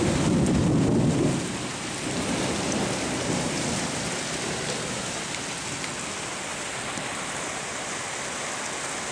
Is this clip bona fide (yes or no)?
yes